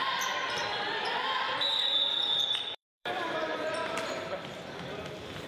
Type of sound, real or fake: fake